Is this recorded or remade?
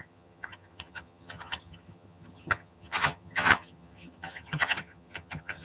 remade